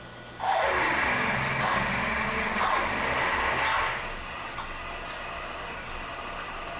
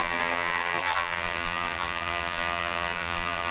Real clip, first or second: first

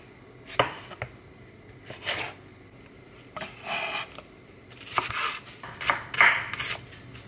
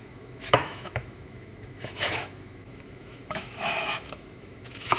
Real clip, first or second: first